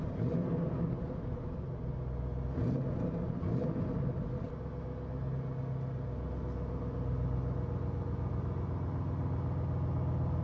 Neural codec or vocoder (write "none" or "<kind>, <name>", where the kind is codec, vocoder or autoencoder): none